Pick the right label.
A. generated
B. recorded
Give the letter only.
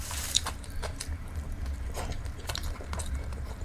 A